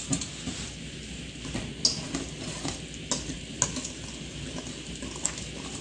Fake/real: real